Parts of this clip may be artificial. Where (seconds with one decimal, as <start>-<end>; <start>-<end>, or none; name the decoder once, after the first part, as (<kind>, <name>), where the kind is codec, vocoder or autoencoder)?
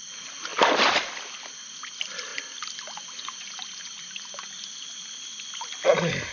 none